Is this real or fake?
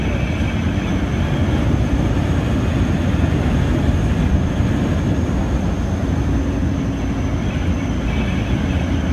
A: real